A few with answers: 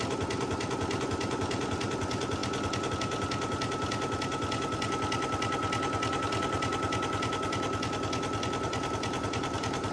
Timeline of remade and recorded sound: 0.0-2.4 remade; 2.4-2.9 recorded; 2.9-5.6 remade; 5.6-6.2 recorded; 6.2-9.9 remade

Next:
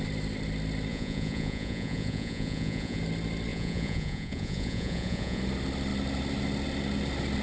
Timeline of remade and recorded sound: 0.0-0.9 recorded; 0.9-3.0 remade; 3.0-3.5 recorded; 3.5-5.4 remade; 5.4-7.4 recorded

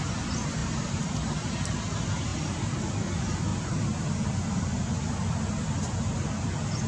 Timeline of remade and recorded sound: 0.0-0.6 recorded; 0.6-1.7 remade; 1.7-2.3 recorded; 2.3-2.9 remade; 2.9-3.5 recorded; 3.5-4.5 remade; 4.5-6.9 recorded